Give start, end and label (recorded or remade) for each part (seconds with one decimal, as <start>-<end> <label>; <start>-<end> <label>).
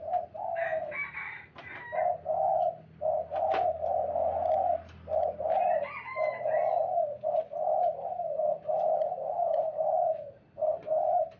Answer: 0.0-1.0 recorded; 1.0-1.5 remade; 1.5-8.4 recorded; 8.4-10.7 remade; 10.7-11.4 recorded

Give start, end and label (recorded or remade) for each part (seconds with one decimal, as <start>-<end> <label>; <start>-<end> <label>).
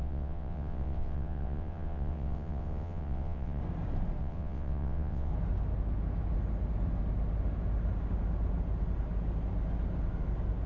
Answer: 0.0-3.6 remade; 3.6-4.2 recorded; 4.2-5.3 remade; 5.3-10.7 recorded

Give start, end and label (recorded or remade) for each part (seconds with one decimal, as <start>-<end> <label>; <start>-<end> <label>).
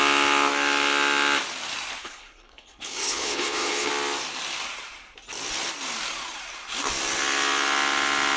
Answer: 0.0-2.0 recorded; 2.0-3.9 remade; 3.9-8.4 recorded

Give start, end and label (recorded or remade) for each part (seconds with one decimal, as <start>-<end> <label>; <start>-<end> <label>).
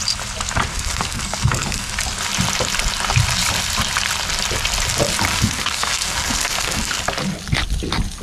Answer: 0.0-0.7 recorded; 0.7-1.9 remade; 1.9-5.3 recorded; 5.3-7.0 remade; 7.0-8.2 recorded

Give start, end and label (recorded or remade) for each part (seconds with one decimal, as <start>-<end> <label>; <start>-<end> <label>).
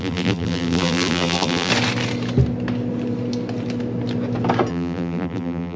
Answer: 0.0-1.7 remade; 1.7-4.7 recorded; 4.7-5.8 remade